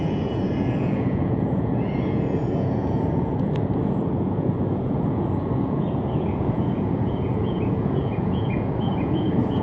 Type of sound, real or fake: fake